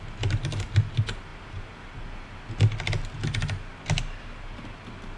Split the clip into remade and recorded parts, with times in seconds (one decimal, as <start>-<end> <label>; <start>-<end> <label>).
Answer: 0.0-5.2 recorded